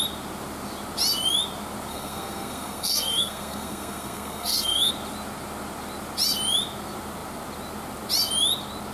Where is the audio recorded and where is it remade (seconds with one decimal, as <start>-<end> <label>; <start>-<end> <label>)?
0.0-1.9 recorded; 1.9-4.9 remade; 4.9-8.9 recorded